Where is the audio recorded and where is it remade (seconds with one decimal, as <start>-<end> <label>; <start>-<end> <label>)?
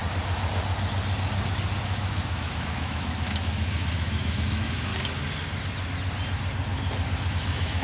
0.0-1.8 recorded; 1.8-4.9 remade; 4.9-7.3 recorded; 7.3-7.8 remade